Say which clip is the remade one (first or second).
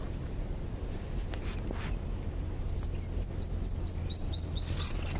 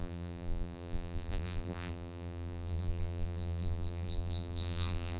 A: second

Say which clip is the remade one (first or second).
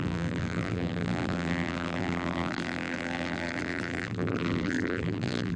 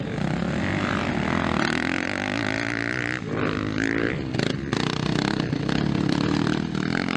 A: first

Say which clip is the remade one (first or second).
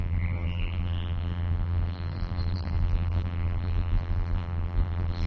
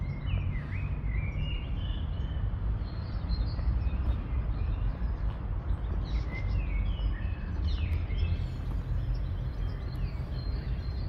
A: first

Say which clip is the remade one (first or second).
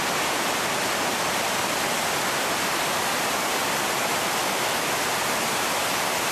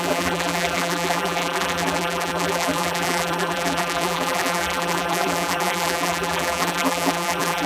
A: second